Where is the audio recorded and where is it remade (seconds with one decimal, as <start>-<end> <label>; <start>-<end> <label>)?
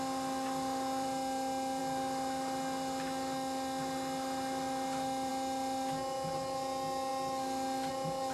0.0-8.3 recorded